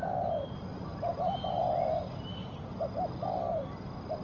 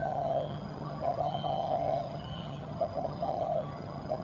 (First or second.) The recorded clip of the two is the first